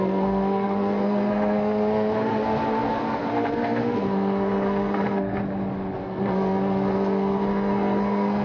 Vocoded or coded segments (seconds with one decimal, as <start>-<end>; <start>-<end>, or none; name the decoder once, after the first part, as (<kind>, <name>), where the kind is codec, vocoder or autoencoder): 0.0-5.4 (codec, SNAC); 6.0-8.4